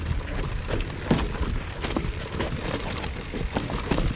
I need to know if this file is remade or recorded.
recorded